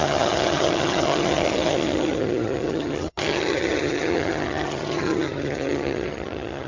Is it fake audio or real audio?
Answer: fake